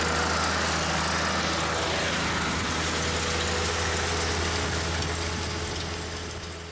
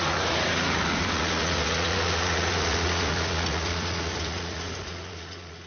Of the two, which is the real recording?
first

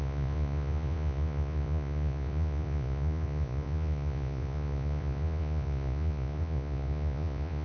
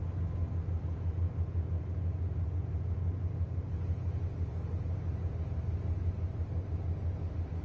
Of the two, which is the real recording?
second